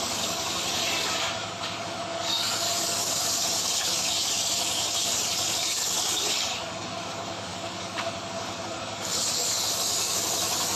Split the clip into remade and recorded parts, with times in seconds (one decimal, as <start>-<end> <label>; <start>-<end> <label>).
0.0-10.8 remade